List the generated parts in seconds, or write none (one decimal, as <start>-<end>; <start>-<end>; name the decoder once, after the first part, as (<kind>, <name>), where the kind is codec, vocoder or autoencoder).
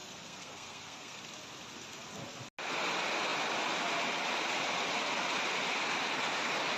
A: 0.0-1.2 (codec, SNAC)